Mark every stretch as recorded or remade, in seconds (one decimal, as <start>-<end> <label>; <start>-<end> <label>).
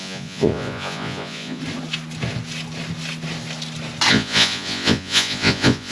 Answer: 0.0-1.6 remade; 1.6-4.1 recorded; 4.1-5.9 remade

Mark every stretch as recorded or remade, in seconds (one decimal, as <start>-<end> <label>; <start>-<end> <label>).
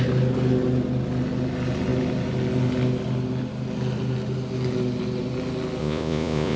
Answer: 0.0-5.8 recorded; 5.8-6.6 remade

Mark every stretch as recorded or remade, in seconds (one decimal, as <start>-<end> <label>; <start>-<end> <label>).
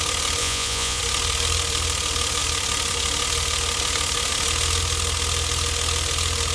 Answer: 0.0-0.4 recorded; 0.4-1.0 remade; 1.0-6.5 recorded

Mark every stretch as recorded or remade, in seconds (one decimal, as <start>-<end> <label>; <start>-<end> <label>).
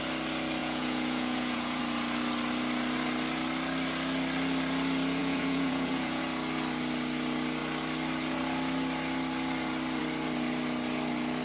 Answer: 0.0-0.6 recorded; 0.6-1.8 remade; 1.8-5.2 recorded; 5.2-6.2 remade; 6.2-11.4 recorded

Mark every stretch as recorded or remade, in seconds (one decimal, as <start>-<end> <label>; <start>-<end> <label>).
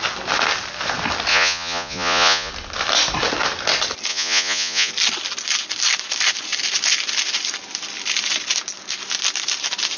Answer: 0.0-1.3 recorded; 1.3-2.5 remade; 2.5-4.1 recorded; 4.1-4.9 remade; 4.9-10.0 recorded